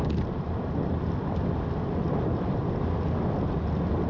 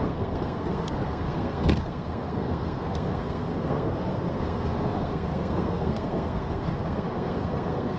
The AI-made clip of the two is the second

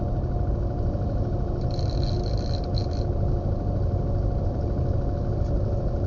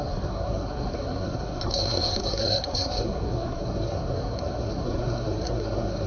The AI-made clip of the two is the second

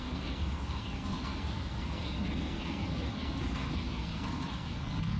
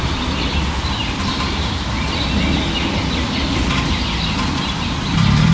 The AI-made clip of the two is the first